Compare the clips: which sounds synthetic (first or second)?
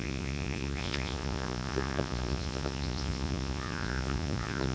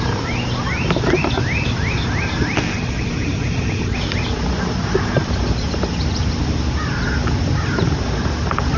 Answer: first